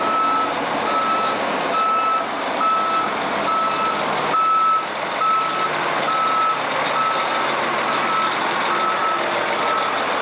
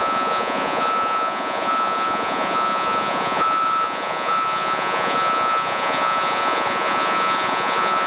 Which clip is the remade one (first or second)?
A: second